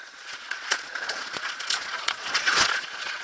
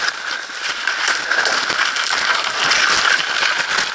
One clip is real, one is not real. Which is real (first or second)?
second